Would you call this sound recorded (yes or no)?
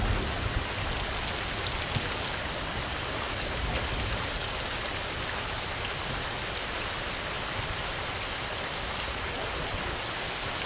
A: yes